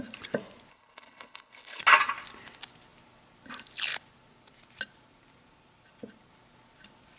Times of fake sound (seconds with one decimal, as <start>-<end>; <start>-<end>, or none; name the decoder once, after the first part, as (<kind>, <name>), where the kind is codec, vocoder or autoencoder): 0.7-1.8 (codec, HILCodec)